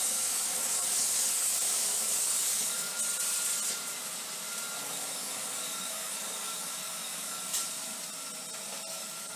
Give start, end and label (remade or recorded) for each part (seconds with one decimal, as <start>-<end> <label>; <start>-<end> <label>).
0.0-2.9 remade; 2.9-4.8 recorded; 4.8-7.5 remade; 7.5-8.9 recorded; 8.9-9.4 remade